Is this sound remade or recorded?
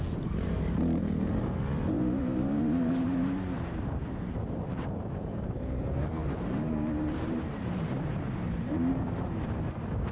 remade